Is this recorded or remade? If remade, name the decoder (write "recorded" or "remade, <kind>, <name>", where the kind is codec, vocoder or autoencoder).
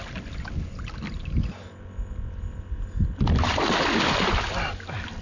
recorded